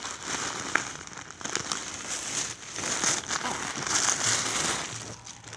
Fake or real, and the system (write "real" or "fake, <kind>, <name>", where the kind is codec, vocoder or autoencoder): real